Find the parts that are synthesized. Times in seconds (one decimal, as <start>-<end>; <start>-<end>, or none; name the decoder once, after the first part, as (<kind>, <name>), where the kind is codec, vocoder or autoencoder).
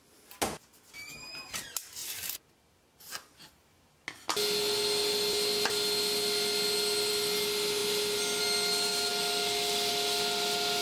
none